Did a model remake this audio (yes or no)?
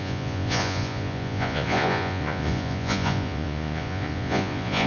yes